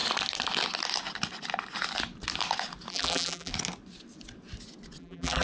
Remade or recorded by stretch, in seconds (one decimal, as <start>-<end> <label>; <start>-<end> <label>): 0.0-2.9 recorded; 2.9-3.5 remade; 3.5-5.0 recorded; 5.0-5.4 remade